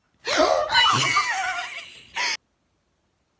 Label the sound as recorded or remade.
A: recorded